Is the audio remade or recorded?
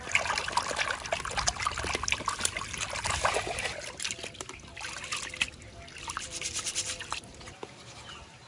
recorded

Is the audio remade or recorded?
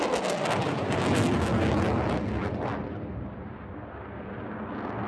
recorded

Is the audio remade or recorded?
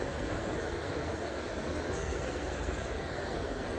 remade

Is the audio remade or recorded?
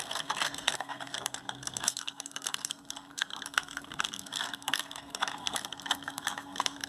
remade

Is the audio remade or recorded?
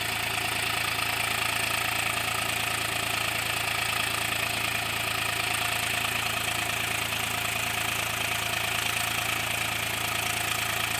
recorded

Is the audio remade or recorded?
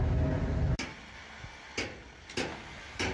recorded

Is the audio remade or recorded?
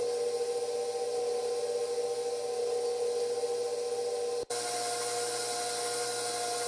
recorded